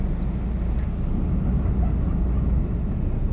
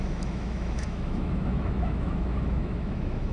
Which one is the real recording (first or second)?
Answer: first